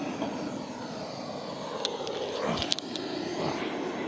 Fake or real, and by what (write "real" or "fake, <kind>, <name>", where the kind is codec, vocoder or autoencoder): real